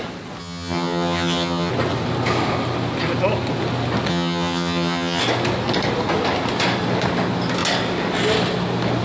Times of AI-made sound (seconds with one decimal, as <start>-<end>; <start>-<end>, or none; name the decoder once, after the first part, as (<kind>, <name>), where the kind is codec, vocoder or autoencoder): 0.4-1.7 (vocoder, HiFi-GAN); 4.1-5.2